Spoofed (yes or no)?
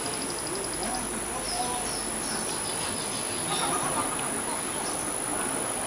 no